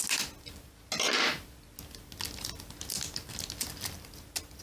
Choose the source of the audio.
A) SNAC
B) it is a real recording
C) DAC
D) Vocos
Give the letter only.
B